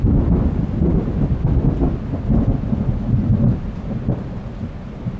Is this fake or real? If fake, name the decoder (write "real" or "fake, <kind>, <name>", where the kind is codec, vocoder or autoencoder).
real